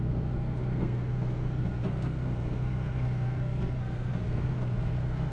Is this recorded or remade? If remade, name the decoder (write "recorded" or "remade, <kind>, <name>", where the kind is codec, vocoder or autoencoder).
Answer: remade, codec, SNAC